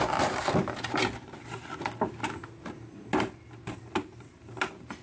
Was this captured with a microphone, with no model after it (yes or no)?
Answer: yes